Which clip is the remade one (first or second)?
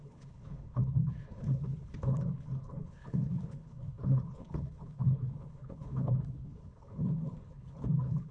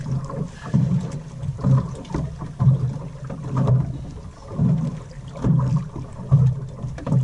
first